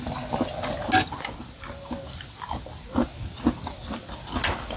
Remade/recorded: recorded